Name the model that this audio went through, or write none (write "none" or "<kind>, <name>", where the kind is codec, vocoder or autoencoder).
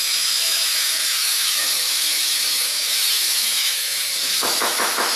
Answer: autoencoder, DAC-VAE